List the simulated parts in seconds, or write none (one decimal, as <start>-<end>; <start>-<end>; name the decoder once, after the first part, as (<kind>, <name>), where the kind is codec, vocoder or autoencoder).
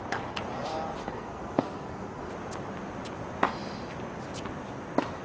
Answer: 1.0-2.3 (codec, SNAC)